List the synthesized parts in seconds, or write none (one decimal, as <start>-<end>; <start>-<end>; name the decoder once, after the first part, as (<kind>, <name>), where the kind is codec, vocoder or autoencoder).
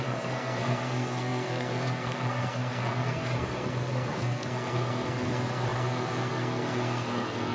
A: 0.0-7.5 (codec, SNAC)